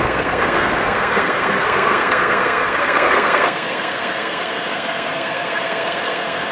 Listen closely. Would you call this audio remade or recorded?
remade